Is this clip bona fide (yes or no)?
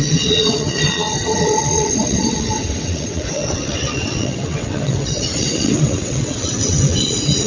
no